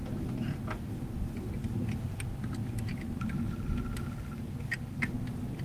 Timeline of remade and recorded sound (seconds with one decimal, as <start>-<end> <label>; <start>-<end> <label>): 0.0-5.6 recorded